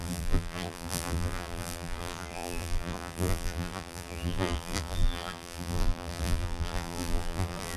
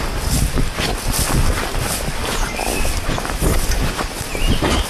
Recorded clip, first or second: second